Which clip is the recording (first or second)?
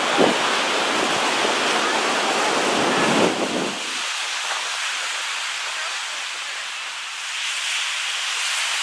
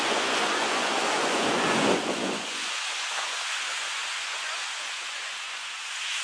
first